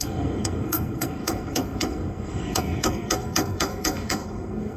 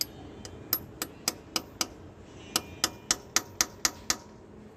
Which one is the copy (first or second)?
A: first